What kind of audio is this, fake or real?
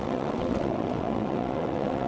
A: fake